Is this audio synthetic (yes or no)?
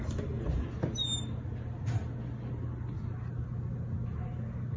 no